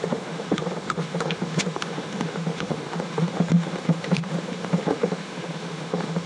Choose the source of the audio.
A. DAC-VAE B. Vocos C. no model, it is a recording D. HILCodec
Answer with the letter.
A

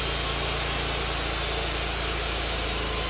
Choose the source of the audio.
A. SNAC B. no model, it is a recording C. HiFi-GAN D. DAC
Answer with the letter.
B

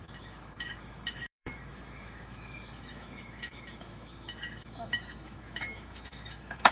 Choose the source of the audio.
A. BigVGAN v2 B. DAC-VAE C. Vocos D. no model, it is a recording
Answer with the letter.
B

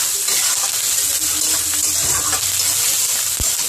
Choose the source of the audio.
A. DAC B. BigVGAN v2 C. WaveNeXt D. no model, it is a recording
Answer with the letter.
D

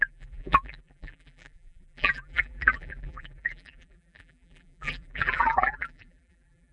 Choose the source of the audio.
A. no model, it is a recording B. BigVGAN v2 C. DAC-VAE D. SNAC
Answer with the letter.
B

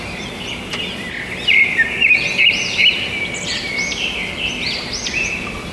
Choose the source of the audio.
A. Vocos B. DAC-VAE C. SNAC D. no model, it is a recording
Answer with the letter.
D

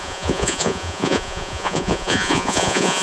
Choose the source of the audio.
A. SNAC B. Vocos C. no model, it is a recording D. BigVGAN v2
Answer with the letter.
B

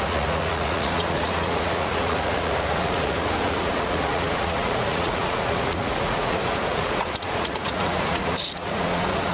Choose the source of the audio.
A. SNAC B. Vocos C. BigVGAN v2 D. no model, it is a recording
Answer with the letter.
B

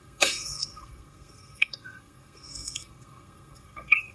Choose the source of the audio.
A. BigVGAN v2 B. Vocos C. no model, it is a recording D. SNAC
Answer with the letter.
D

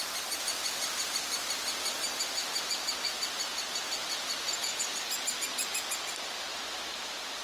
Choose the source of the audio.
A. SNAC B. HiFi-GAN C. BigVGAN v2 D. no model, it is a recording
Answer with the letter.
D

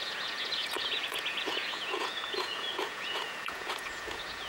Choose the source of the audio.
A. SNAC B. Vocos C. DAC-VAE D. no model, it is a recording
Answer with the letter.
B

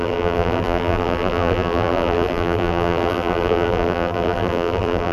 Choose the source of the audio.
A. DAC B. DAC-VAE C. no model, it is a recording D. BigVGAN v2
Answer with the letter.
D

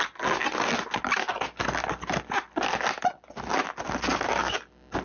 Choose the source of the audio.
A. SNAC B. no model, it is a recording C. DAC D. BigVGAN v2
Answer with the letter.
B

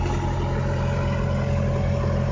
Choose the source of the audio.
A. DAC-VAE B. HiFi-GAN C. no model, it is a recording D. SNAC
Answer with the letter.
C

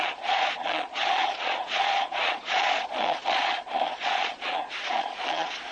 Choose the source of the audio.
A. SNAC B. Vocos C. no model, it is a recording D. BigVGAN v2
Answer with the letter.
B